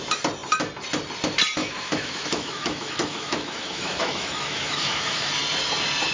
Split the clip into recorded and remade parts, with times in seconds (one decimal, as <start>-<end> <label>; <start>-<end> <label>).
0.0-1.6 recorded; 1.6-5.3 remade; 5.3-6.1 recorded